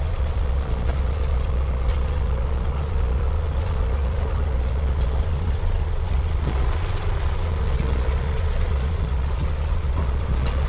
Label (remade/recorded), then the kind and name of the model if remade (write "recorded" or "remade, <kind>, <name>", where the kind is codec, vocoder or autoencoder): remade, vocoder, Vocos